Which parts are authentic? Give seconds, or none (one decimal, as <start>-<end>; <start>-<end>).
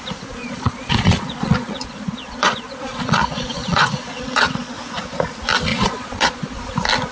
0.0-0.4; 4.7-5.7; 6.6-7.1